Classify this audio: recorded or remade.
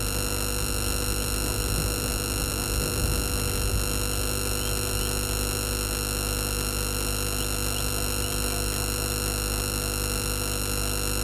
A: recorded